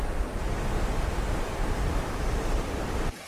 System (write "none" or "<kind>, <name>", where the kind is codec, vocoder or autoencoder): none